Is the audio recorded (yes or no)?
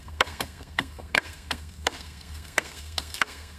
no